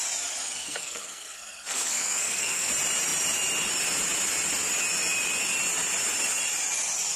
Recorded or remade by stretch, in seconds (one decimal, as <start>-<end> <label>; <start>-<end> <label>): 0.0-0.4 recorded; 0.4-2.7 remade; 2.7-7.2 recorded